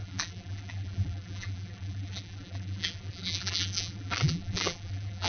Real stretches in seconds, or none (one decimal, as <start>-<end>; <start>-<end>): none